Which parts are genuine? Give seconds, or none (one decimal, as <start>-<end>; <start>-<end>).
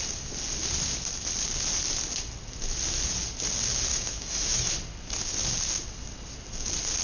0.0-3.9; 4.7-7.0